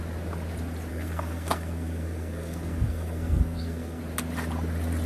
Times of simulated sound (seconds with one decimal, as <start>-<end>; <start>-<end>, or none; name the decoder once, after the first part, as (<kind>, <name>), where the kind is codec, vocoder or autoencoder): 0.9-4.0 (codec, SNAC)